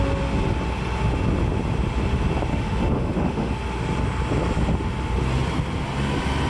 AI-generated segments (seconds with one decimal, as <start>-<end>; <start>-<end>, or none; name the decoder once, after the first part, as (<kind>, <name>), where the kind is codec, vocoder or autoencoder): 2.5-3.5 (autoencoder, DAC-VAE)